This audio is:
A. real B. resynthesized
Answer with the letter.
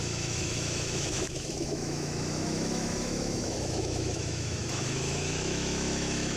B